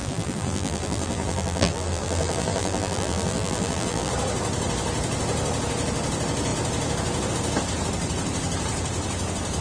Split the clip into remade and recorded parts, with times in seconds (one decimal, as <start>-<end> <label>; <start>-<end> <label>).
0.0-4.1 remade; 4.1-9.6 recorded